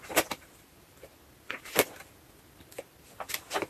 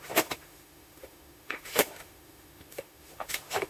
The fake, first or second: second